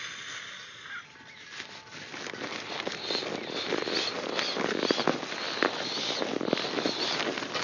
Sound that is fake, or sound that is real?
real